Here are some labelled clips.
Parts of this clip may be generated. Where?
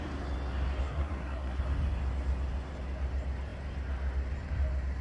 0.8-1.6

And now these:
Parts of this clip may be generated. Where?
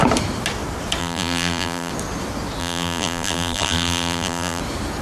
1.0-1.9; 2.6-4.6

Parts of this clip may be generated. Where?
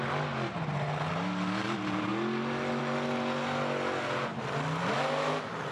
none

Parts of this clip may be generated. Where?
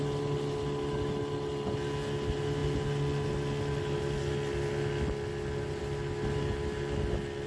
none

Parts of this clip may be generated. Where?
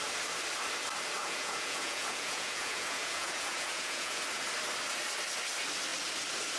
1.2-4.2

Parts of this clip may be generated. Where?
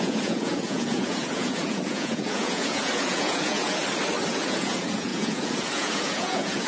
0.0-3.8; 4.3-6.7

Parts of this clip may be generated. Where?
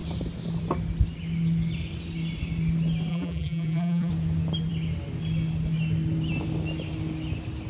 3.1-4.1